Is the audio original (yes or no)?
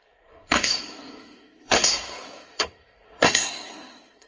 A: no